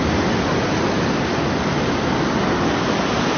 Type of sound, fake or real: real